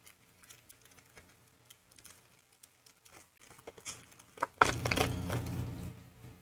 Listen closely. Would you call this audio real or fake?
real